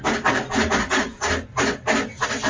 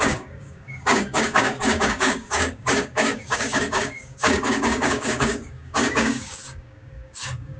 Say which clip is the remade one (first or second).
second